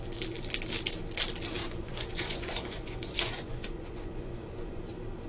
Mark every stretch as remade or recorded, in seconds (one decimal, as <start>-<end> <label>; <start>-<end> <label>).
0.0-1.6 recorded; 1.6-4.8 remade; 4.8-5.3 recorded